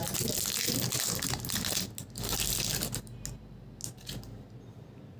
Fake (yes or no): no